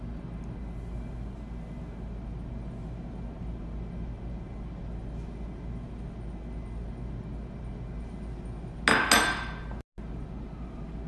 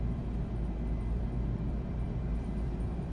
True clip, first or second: first